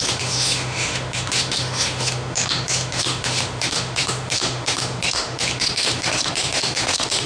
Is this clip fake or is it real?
fake